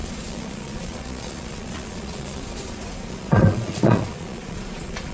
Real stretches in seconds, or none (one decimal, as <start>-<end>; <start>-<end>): none